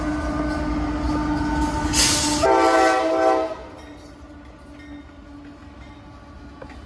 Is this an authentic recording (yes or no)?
yes